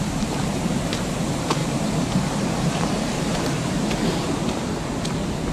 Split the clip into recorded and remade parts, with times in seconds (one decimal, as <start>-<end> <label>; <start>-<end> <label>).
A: 0.0-0.5 recorded; 0.5-1.1 remade; 1.1-1.6 recorded; 1.6-3.7 remade; 3.7-5.5 recorded